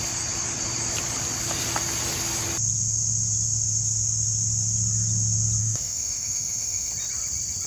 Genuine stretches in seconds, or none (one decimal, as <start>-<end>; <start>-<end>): 0.0-5.6; 6.9-7.7